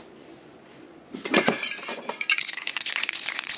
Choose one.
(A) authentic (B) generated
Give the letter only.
B